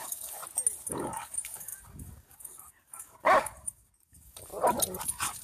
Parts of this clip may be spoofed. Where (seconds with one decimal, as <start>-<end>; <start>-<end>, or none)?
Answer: 0.0-0.4; 0.9-4.5; 5.0-5.4